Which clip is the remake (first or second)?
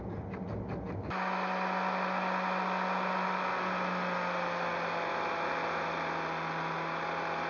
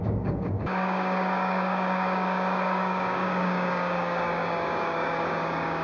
second